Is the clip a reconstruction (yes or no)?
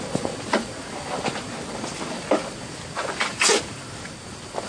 no